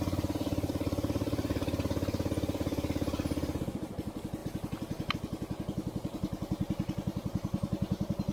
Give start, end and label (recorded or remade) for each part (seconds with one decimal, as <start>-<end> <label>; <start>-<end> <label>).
0.0-8.3 recorded